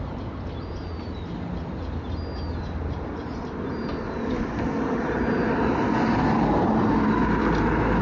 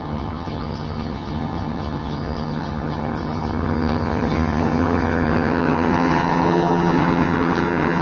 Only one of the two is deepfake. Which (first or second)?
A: second